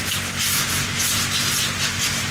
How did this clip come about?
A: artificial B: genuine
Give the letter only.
B